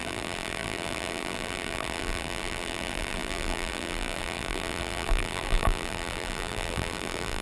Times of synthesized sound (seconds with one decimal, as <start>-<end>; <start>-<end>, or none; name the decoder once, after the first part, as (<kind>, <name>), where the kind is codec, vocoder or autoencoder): 0.0-7.4 (vocoder, BigVGAN v2)

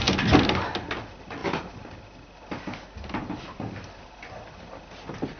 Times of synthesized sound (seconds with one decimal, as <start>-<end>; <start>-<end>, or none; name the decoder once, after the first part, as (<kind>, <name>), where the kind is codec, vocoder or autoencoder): 1.4-4.6 (vocoder, BigVGAN v2)

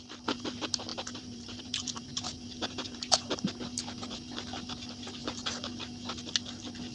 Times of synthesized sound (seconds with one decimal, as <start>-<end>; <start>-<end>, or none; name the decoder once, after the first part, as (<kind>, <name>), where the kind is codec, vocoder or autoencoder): 0.9-3.3 (vocoder, BigVGAN v2)

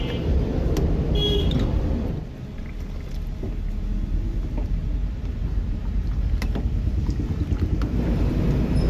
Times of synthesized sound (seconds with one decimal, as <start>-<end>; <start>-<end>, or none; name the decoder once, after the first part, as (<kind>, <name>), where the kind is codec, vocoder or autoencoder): 5.4-6.2 (vocoder, BigVGAN v2)

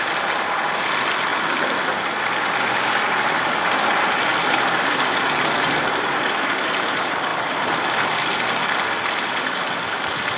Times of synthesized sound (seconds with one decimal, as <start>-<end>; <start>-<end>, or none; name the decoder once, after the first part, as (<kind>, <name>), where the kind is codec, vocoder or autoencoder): none